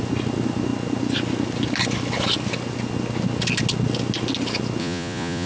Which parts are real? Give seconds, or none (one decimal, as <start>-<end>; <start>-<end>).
0.0-4.8